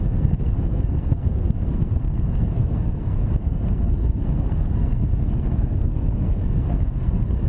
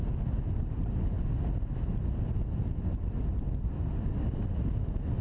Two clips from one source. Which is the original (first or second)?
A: second